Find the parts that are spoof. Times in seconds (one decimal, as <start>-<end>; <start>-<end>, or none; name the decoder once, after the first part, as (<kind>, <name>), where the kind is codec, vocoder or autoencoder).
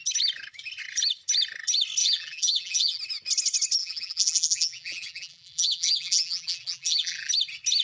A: 2.0-3.0 (vocoder, BigVGAN v2); 3.8-7.3